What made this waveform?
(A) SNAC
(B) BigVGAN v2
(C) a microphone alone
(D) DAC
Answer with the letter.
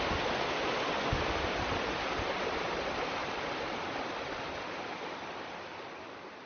B